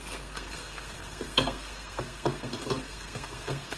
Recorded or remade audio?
remade